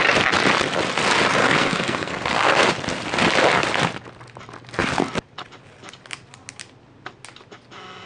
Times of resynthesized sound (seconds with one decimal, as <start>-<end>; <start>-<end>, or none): 1.4-2.7